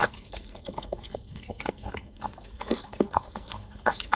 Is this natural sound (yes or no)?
no